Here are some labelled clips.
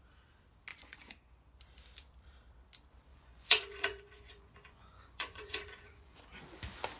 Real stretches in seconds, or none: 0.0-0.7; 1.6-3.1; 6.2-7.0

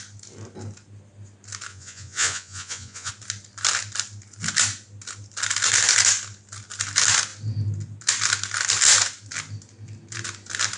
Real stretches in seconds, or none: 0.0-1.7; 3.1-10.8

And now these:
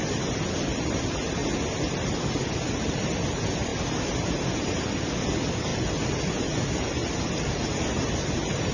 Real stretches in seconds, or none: 0.0-8.7

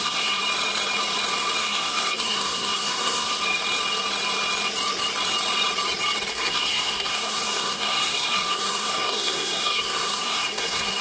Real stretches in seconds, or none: 0.4-1.6; 3.4-6.3

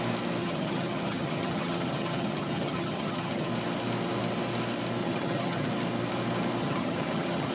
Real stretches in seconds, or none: 0.0-0.4; 3.5-5.0; 5.7-6.6